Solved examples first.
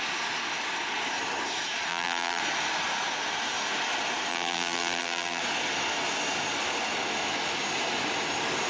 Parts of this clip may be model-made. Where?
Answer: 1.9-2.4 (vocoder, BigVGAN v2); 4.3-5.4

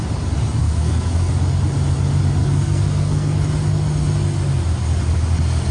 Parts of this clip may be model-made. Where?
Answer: 0.6-1.3 (codec, SNAC); 2.4-3.4

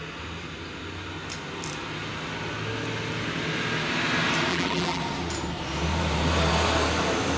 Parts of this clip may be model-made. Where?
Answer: 4.5-5.0 (vocoder, BigVGAN v2)

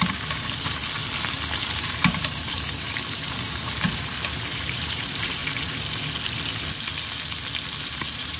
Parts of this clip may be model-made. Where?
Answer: 0.0-0.8 (vocoder, BigVGAN v2); 1.7-5.4; 8.0-8.4

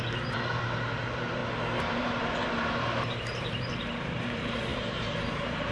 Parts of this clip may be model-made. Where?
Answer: 0.0-1.4 (vocoder, BigVGAN v2); 2.0-5.7

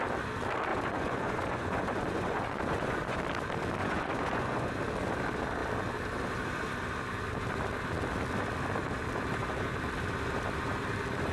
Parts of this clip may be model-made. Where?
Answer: 0.7-3.2 (vocoder, Vocos); 3.8-4.7

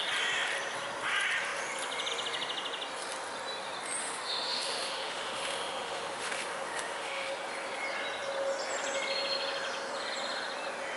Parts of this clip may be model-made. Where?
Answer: 4.0-7.3 (autoencoder, DAC-VAE)

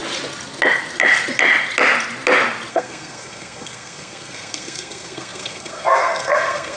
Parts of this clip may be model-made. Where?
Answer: 2.7-6.8 (codec, SNAC)